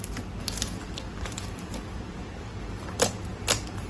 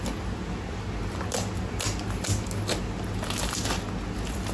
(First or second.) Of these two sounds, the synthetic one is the first